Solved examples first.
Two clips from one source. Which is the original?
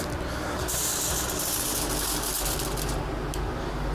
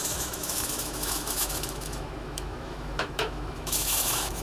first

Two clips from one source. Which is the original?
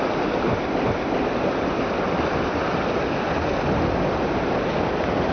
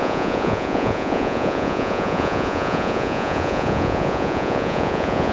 first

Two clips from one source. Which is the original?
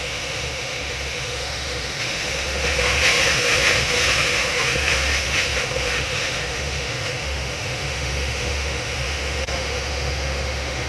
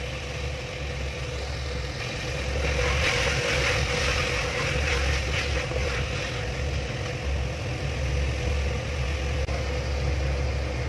second